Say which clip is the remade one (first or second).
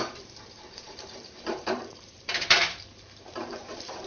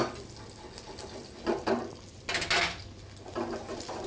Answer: first